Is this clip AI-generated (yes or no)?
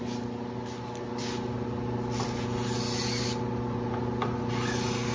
no